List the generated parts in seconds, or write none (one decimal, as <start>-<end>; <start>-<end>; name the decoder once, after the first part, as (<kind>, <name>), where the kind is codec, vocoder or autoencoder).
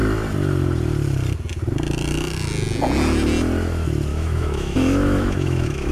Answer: 4.1-5.9 (autoencoder, DAC-VAE)